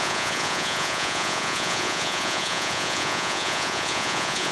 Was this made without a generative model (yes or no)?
no